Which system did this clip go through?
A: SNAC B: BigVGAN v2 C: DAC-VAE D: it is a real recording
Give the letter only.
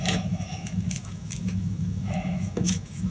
C